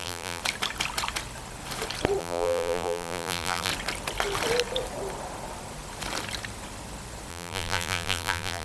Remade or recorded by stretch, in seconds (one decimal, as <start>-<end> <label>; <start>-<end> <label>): 0.0-0.4 remade; 0.4-2.2 recorded; 2.2-3.7 remade; 3.7-7.3 recorded; 7.3-8.6 remade